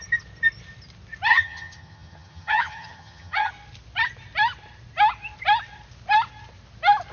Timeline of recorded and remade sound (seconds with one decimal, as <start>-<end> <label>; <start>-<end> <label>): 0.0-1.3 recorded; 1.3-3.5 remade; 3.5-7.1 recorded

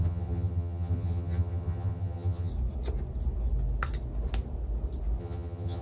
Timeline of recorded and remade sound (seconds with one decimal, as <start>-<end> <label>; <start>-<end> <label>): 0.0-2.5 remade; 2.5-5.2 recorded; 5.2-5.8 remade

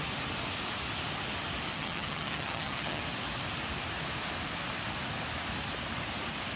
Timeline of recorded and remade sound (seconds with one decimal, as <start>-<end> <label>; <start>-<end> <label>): 0.0-1.7 recorded; 1.7-3.0 remade; 3.0-6.6 recorded

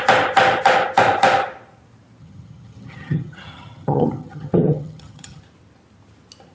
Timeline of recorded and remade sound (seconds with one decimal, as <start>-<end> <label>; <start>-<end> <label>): 0.0-2.2 recorded; 2.2-5.4 remade; 5.4-6.5 recorded

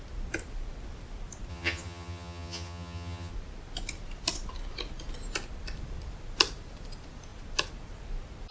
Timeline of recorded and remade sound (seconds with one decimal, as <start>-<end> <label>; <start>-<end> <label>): 0.0-1.5 recorded; 1.5-3.3 remade; 3.3-8.5 recorded

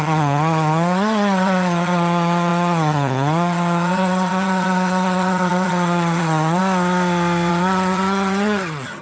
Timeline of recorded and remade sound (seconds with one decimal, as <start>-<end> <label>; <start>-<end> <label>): 0.0-6.6 remade; 6.6-7.5 recorded; 7.5-9.0 remade

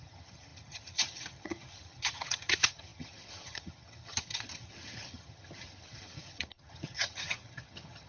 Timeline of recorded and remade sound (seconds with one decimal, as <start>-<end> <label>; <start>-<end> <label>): 0.0-8.1 remade